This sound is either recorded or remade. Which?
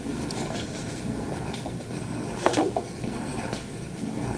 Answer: remade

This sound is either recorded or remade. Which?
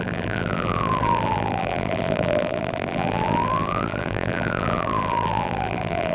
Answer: remade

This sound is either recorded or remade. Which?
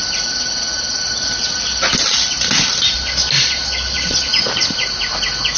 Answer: recorded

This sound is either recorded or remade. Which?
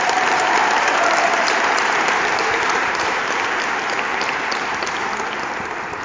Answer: remade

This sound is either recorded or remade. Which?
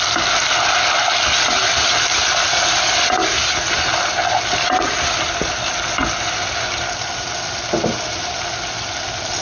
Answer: recorded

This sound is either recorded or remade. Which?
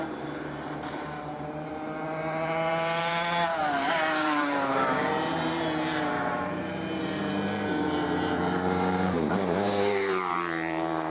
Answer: remade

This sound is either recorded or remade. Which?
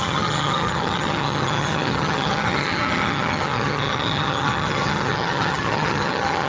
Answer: remade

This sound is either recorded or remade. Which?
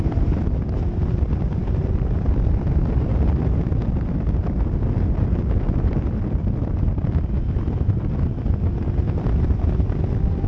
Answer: remade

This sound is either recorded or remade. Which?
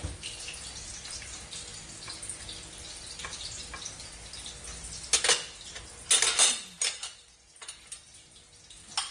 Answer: recorded